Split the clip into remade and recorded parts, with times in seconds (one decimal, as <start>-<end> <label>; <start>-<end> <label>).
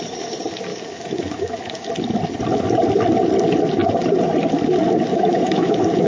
0.0-0.7 recorded; 0.7-1.9 remade; 1.9-5.1 recorded; 5.1-6.1 remade